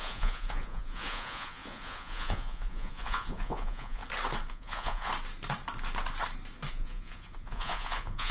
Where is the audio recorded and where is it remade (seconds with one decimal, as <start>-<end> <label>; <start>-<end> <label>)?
0.0-4.0 remade; 4.0-4.5 recorded; 4.5-5.1 remade; 5.1-6.7 recorded; 6.7-8.3 remade